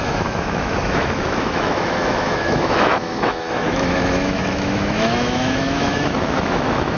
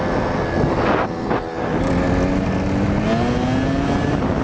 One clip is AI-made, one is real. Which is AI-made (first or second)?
first